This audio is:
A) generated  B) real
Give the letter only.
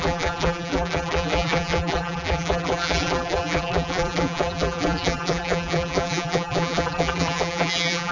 A